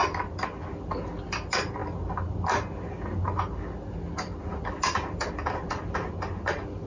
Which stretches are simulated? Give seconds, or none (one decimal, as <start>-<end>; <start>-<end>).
none